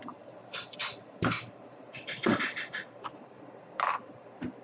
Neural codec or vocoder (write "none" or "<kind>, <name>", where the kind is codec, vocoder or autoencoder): vocoder, BigVGAN v2